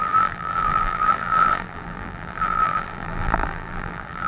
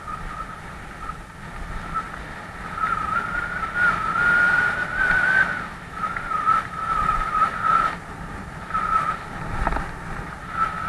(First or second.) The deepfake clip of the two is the first